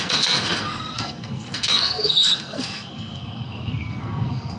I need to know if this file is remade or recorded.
remade